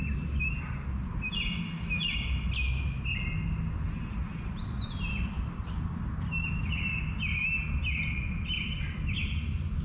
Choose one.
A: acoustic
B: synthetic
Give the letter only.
A